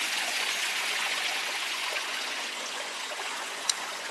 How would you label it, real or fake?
fake